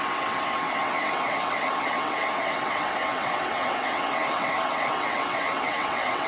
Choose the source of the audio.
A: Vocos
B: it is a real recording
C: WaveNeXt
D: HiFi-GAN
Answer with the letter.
C